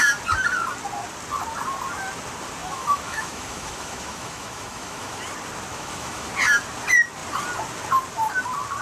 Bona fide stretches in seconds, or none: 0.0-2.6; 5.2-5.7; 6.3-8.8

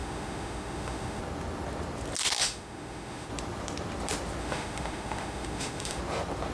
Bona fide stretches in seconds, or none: 1.2-2.4; 3.3-4.4; 6.0-6.5

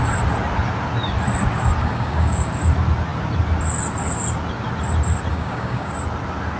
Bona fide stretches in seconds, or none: 0.0-1.8; 2.5-5.3; 5.9-6.6

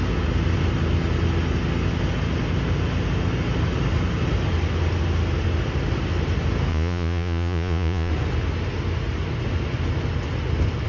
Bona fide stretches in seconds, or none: 0.0-6.7; 8.1-10.9